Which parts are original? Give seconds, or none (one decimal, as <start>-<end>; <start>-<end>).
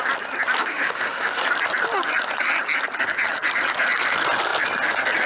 0.0-0.6; 1.4-5.3